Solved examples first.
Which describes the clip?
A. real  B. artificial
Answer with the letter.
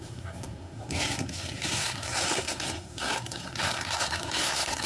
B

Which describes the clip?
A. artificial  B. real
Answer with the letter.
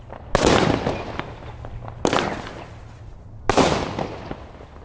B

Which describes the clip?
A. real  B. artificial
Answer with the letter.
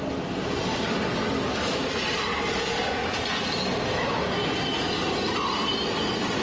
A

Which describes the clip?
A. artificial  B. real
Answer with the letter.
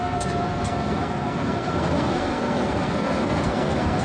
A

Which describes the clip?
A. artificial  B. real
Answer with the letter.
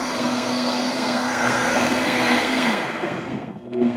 A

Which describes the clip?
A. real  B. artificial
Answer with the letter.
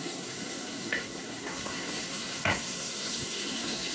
B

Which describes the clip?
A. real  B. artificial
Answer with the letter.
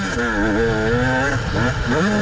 A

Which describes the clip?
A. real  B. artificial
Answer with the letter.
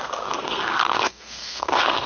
B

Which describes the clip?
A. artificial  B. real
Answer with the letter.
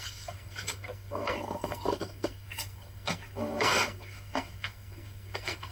A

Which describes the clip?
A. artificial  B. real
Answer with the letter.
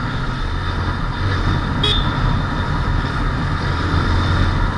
B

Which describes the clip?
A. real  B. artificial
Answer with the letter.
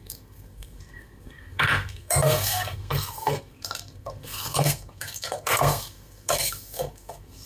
B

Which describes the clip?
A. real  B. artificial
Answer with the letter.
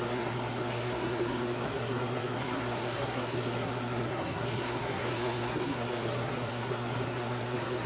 B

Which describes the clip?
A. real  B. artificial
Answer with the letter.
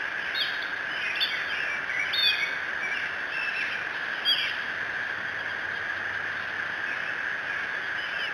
A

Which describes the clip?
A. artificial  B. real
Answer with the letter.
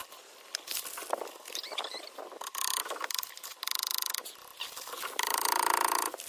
B